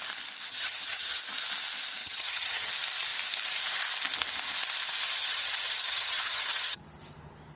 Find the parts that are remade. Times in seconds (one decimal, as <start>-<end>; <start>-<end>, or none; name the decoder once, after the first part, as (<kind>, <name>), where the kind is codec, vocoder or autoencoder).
0.5-1.2 (vocoder, HiFi-GAN); 2.0-2.7; 5.2-6.8